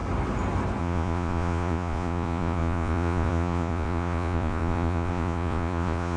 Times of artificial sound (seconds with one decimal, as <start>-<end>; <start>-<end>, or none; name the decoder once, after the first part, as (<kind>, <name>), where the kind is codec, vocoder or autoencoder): 0.8-6.2 (vocoder, Vocos)